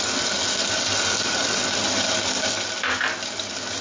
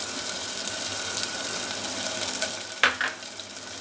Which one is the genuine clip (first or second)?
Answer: first